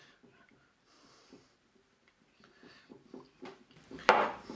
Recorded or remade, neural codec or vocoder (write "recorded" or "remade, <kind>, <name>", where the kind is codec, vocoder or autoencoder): remade, vocoder, BigVGAN v2